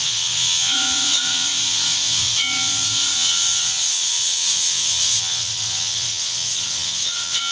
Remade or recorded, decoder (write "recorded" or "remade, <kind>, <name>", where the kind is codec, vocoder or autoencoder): remade, vocoder, WaveNeXt